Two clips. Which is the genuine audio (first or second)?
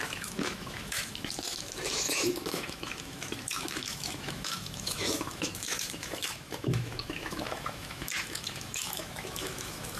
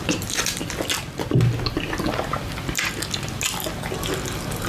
second